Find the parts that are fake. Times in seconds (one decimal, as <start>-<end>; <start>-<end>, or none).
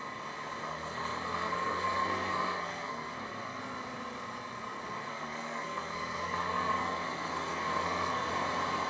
0.6-3.6; 5.1-8.3